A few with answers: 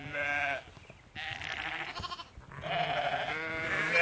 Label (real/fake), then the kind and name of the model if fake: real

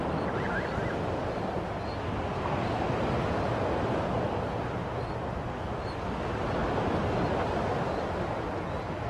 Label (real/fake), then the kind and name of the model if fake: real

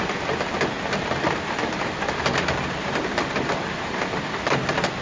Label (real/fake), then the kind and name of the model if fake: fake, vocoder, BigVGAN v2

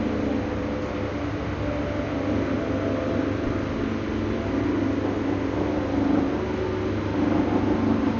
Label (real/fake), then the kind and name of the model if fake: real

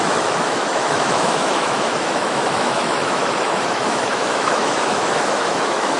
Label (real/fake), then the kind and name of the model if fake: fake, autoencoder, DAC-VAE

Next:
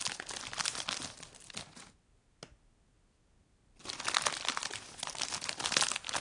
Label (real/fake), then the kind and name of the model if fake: real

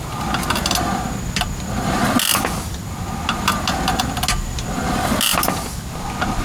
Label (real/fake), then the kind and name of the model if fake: real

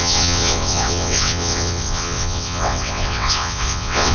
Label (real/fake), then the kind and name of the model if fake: fake, vocoder, WaveNeXt